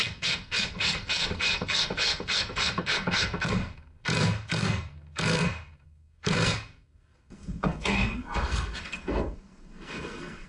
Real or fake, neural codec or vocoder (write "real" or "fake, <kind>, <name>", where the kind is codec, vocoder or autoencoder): fake, codec, SNAC